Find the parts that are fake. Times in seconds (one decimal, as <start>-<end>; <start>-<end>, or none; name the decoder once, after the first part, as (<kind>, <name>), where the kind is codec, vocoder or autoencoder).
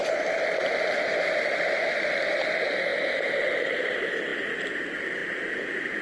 1.5-4.3 (vocoder, BigVGAN v2); 4.8-5.2